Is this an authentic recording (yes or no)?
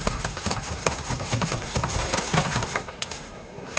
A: no